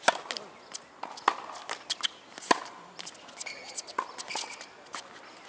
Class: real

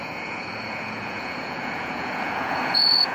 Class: fake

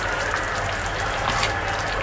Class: real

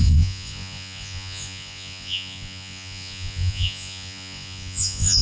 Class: fake